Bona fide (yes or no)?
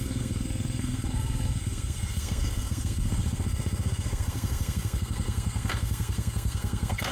no